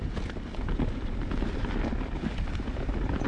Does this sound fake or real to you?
real